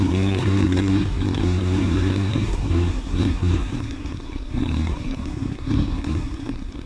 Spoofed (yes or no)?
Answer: yes